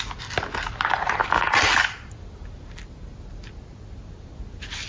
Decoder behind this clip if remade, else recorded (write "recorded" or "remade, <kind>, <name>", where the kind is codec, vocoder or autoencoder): recorded